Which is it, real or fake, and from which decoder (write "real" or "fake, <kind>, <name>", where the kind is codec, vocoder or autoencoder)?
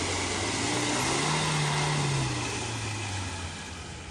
real